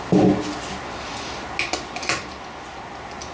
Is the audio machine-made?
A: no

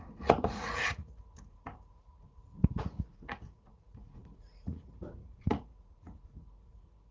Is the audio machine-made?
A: yes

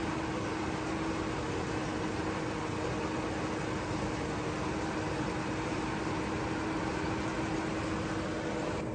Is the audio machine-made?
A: no